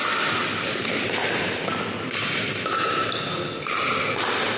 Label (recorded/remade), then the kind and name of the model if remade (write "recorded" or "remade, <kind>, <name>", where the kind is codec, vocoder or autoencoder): recorded